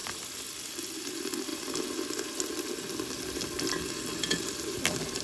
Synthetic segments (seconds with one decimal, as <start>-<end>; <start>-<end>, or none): none